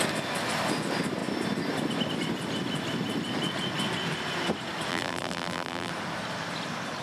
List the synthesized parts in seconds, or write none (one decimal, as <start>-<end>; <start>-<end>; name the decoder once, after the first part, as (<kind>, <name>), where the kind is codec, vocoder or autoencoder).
4.9-5.9 (vocoder, BigVGAN v2)